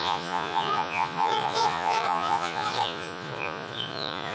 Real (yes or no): no